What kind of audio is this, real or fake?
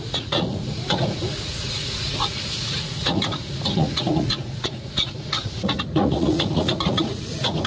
fake